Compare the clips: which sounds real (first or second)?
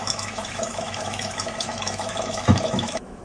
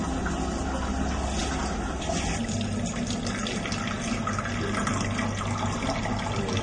second